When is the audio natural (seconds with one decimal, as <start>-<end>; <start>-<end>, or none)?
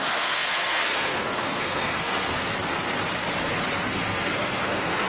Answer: 2.5-3.9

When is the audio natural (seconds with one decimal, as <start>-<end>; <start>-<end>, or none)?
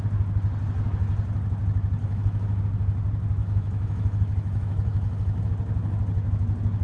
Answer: 0.0-2.0; 2.6-3.4; 5.5-6.8